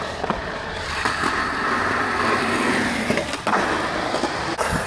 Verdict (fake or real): real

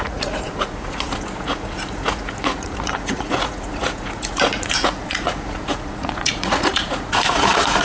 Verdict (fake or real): fake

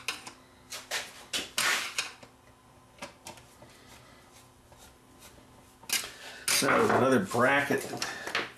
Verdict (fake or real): real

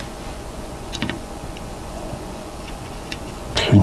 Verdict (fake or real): fake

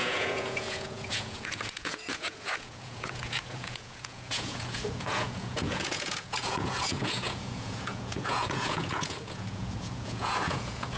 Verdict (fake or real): fake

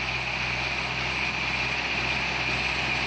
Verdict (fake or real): real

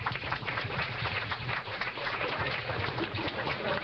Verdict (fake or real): fake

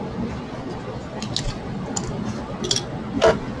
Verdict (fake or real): real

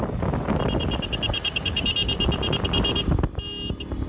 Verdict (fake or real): real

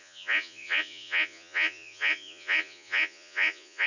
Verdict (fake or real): fake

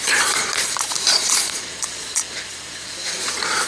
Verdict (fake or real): fake